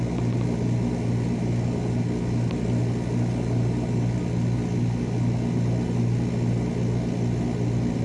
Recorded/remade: recorded